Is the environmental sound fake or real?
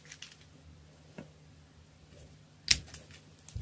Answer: real